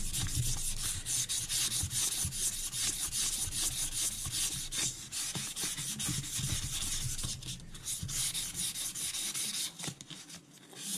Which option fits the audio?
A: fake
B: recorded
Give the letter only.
B